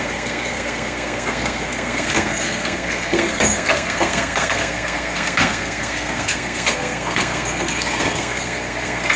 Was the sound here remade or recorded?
remade